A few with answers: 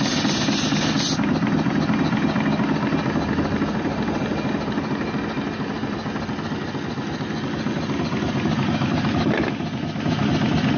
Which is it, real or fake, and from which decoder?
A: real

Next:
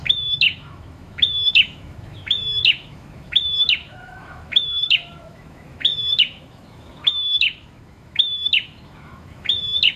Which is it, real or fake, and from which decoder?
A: fake, autoencoder, DAC-VAE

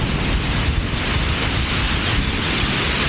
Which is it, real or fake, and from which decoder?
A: real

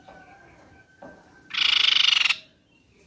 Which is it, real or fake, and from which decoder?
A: real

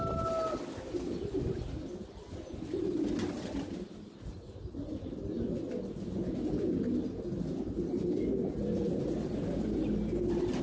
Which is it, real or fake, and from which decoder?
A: real